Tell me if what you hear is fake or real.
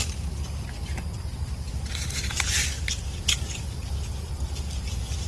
real